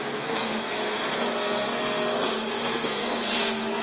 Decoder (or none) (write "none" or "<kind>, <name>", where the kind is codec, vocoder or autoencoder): codec, SNAC